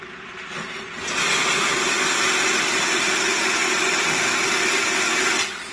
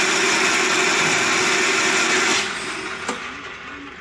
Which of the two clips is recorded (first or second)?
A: second